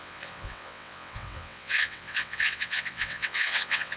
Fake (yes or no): yes